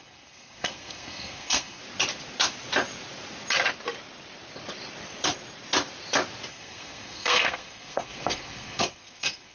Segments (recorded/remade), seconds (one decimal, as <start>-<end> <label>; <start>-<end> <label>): 0.0-1.8 remade; 1.8-6.5 recorded; 6.5-9.5 remade